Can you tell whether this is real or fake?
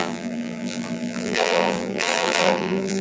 fake